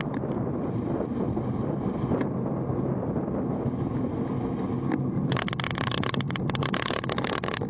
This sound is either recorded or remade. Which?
recorded